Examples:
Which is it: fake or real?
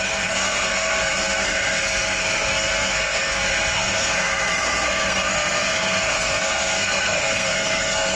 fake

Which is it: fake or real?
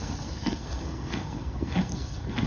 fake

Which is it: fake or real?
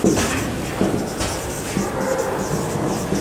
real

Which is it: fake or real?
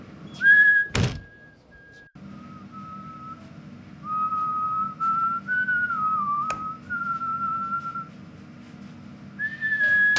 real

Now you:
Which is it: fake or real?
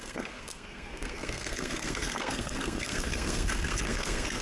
fake